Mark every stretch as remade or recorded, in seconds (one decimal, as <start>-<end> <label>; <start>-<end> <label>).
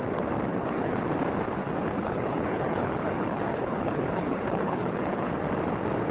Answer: 0.0-0.5 recorded; 0.5-1.0 remade; 1.0-1.6 recorded; 1.6-5.3 remade; 5.3-6.1 recorded